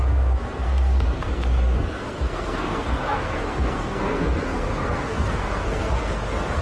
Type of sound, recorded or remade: remade